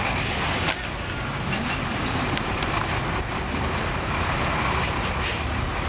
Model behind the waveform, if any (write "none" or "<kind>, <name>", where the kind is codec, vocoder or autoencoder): none